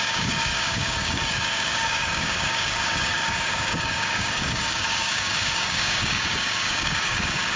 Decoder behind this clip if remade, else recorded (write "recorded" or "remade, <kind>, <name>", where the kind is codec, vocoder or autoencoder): remade, codec, DAC